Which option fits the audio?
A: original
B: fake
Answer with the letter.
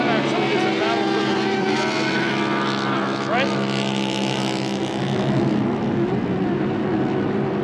A